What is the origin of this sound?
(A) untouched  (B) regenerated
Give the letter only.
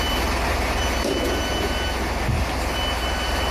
A